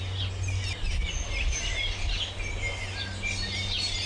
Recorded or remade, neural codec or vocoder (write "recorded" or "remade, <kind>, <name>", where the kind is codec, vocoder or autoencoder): recorded